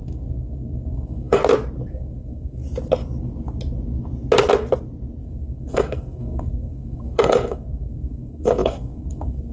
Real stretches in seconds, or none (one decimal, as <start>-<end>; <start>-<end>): 1.4-1.9; 2.6-5.2